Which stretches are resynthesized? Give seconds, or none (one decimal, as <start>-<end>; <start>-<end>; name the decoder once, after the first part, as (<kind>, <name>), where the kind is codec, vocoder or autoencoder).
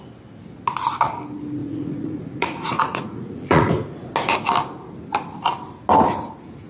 1.6-3.7 (vocoder, Vocos)